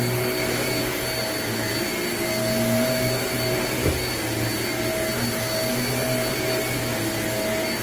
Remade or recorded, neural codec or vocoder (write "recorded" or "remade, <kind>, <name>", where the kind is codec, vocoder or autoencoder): recorded